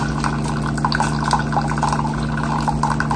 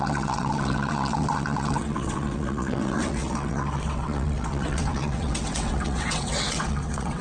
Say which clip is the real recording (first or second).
first